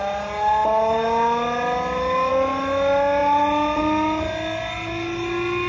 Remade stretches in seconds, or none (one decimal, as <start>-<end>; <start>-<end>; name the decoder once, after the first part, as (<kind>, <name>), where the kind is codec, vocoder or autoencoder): none